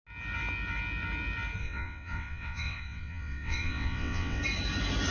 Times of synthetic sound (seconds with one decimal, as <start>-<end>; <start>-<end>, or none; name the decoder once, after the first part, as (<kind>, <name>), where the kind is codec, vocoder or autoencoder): 1.6-4.4 (vocoder, WaveNeXt)